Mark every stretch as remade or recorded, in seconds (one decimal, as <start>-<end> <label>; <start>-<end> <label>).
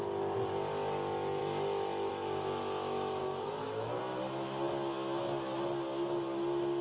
0.0-3.2 recorded; 3.2-4.0 remade; 4.0-6.8 recorded